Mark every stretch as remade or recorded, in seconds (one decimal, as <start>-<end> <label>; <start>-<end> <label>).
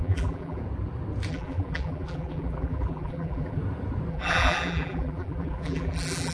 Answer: 0.0-0.6 remade; 0.6-1.3 recorded; 1.3-3.6 remade; 3.6-4.1 recorded; 4.1-6.3 remade